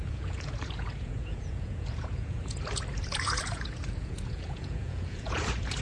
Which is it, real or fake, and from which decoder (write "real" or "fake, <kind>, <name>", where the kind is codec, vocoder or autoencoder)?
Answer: fake, vocoder, Vocos